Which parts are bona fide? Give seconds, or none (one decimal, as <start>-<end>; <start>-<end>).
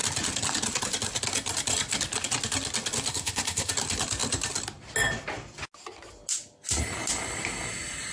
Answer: 0.0-3.1; 3.7-8.1